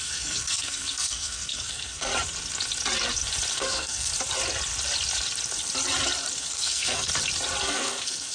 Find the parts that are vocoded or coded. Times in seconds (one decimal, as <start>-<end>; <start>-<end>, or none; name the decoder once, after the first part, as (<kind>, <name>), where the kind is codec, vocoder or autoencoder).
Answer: 0.0-2.1 (codec, SNAC); 3.5-4.1; 6.4-7.1; 7.6-8.3